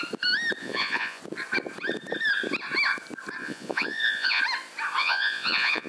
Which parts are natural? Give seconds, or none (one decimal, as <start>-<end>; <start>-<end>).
0.0-0.6; 1.2-3.4; 4.4-5.0